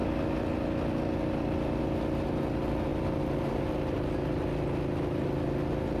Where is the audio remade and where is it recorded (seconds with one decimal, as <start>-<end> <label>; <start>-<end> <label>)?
0.0-2.9 recorded; 2.9-3.7 remade; 3.7-6.0 recorded